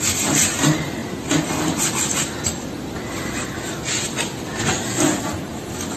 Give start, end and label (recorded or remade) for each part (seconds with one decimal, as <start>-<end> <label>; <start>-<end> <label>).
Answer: 0.0-6.0 recorded

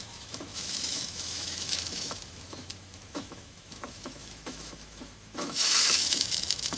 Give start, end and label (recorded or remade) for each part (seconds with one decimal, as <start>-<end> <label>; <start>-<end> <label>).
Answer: 0.0-6.8 remade

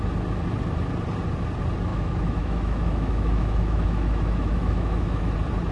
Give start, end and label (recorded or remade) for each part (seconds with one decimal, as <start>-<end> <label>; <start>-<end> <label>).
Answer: 0.0-1.9 recorded; 1.9-5.3 remade; 5.3-5.7 recorded

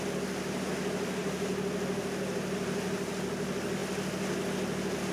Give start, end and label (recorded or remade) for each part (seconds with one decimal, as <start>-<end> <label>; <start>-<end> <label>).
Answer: 0.0-5.1 recorded

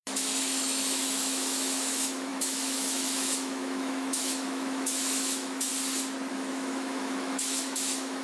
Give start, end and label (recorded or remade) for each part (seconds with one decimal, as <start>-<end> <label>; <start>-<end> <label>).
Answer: 0.0-5.7 remade; 5.7-6.3 recorded; 6.3-8.2 remade

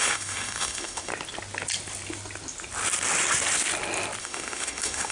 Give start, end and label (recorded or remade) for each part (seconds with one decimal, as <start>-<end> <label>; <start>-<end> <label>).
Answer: 0.0-1.1 remade; 1.1-4.2 recorded; 4.2-5.1 remade

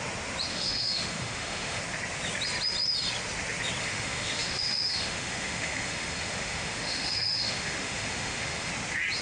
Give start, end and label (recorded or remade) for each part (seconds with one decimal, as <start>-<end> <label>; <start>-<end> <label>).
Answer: 0.0-0.5 recorded; 0.5-1.8 remade; 1.8-3.8 recorded; 3.8-8.7 remade; 8.7-9.2 recorded